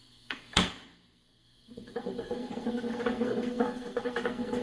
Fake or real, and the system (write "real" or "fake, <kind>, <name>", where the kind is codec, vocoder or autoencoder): fake, codec, SNAC